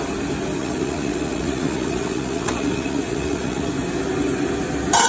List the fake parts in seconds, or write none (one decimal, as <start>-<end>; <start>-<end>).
0.6-3.7